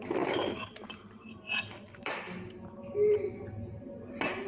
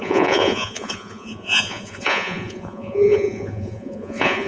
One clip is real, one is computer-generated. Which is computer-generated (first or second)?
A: second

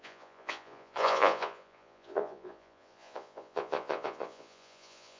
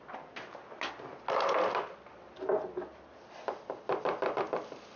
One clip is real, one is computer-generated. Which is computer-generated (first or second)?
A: first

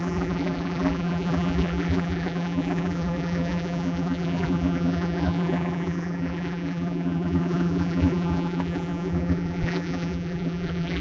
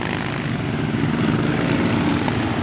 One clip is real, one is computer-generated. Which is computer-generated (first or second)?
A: first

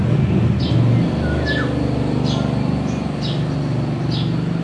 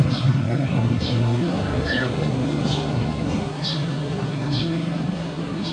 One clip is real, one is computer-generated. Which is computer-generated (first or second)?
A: second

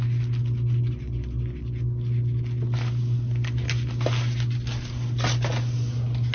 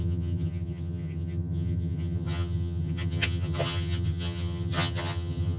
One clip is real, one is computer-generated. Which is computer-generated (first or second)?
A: second